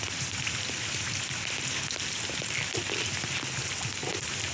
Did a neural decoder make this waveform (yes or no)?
no